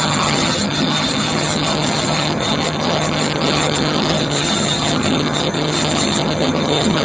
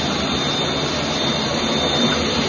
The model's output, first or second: first